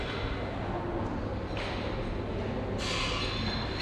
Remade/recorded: recorded